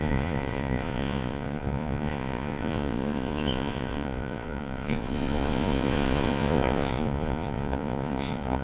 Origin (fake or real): fake